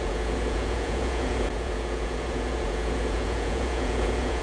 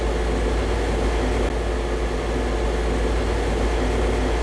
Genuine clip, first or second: second